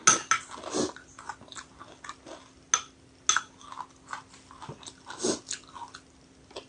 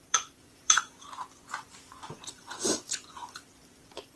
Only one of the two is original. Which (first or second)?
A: first